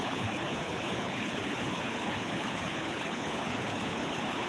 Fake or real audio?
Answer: fake